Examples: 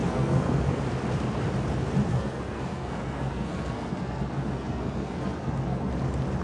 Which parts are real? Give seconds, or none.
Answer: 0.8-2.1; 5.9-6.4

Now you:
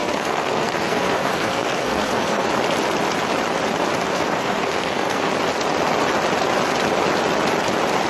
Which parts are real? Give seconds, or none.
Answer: 2.5-4.1; 5.3-8.1

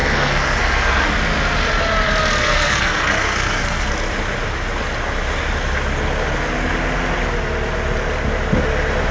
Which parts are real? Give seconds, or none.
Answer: 1.0-2.4; 3.9-9.1

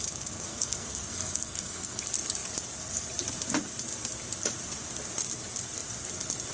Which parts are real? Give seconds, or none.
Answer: 0.0-0.5; 2.0-6.5

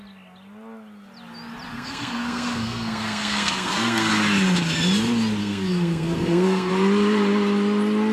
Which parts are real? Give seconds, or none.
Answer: 0.0-1.7; 4.1-5.4; 6.7-8.1

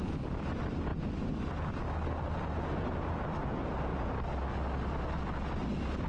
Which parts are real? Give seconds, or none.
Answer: 0.0-6.1